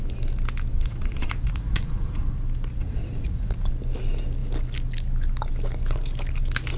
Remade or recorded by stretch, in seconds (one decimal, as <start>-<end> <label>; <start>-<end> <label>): 0.0-0.7 recorded; 0.7-2.3 remade; 2.3-2.8 recorded; 2.8-3.7 remade; 3.7-6.8 recorded